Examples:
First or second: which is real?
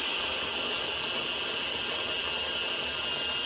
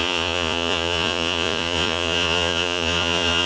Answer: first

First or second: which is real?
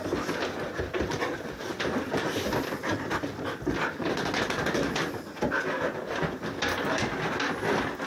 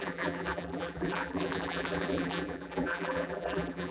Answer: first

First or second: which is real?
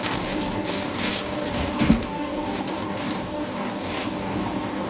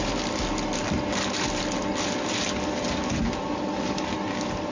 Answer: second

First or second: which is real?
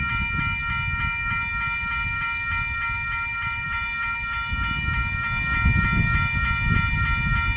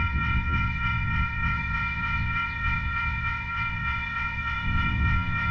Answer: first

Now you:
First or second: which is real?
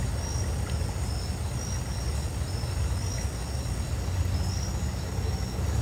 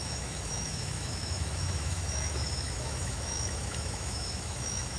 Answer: first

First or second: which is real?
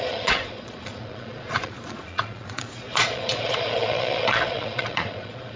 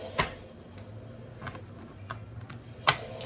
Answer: second